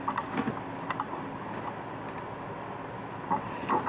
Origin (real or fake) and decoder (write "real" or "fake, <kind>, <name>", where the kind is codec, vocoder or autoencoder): real